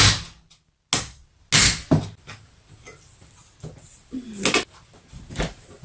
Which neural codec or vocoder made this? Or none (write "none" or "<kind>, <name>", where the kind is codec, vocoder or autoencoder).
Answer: none